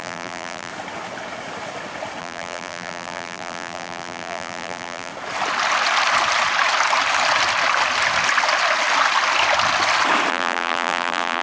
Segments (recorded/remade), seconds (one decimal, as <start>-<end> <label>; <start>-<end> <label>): 0.0-0.7 remade; 0.7-2.2 recorded; 2.2-5.1 remade; 5.1-10.3 recorded; 10.3-11.4 remade